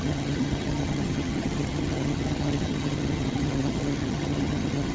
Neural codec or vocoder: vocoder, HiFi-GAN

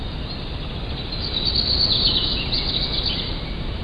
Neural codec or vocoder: none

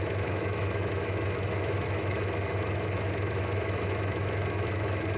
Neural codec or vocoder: autoencoder, DAC-VAE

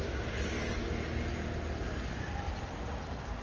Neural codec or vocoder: none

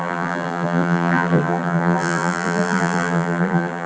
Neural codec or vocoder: vocoder, BigVGAN v2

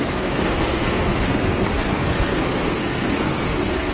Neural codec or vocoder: codec, SNAC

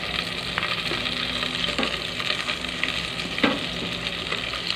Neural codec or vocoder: none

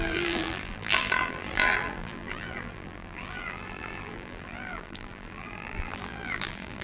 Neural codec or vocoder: vocoder, BigVGAN v2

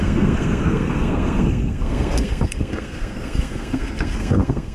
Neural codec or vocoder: codec, SNAC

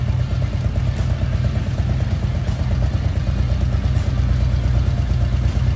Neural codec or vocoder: none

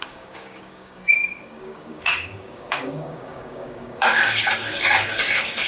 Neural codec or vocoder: codec, DAC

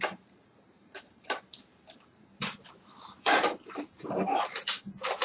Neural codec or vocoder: vocoder, BigVGAN v2